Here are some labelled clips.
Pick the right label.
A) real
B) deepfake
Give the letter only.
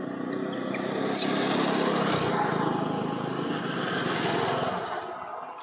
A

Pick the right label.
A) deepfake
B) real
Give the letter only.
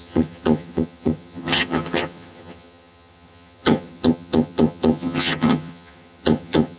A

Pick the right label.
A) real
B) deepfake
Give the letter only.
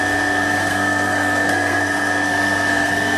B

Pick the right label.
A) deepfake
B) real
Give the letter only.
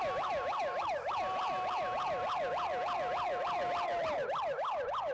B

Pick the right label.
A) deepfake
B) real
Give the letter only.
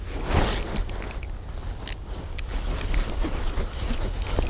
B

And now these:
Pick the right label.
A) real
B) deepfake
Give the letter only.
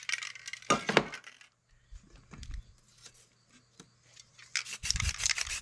A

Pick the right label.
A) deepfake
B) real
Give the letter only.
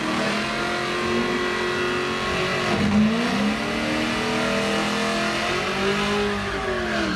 B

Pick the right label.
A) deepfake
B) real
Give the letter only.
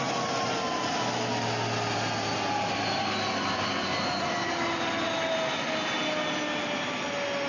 B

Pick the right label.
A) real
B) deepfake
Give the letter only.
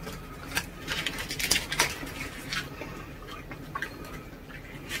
A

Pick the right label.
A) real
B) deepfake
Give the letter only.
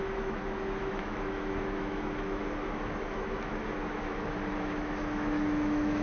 B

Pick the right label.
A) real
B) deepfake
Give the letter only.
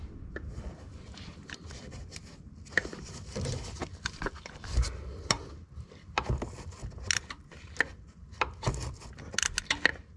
A